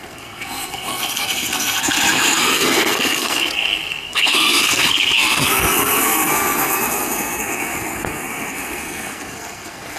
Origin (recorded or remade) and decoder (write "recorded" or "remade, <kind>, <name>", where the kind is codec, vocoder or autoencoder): remade, codec, SNAC